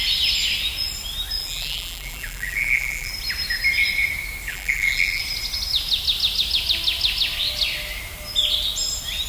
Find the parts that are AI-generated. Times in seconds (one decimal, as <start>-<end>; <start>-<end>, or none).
1.4-3.1; 4.5-5.2